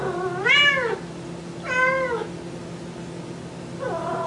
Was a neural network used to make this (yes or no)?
no